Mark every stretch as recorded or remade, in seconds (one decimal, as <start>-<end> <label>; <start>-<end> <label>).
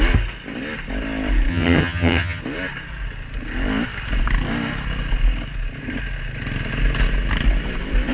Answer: 0.0-1.5 recorded; 1.5-2.4 remade; 2.4-8.1 recorded